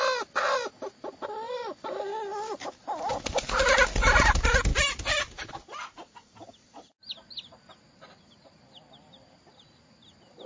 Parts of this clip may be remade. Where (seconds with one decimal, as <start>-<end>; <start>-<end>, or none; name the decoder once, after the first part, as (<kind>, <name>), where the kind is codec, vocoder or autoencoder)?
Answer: none

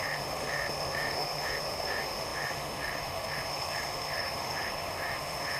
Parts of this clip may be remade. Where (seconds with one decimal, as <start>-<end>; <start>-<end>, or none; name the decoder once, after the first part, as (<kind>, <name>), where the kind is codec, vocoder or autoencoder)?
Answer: 0.0-5.6 (autoencoder, DAC-VAE)

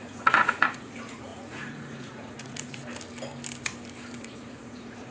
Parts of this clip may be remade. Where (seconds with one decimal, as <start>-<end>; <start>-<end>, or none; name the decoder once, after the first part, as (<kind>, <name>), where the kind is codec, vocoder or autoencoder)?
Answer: 0.0-2.8 (vocoder, Vocos); 4.2-5.1

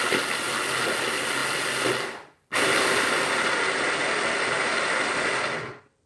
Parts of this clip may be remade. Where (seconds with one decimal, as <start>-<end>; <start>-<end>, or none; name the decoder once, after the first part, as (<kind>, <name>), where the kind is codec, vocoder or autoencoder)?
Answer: none